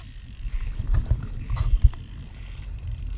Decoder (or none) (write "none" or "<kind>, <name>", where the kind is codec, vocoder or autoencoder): vocoder, BigVGAN v2